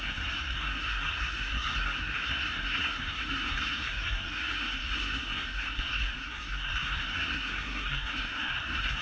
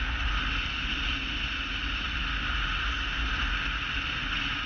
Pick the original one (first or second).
second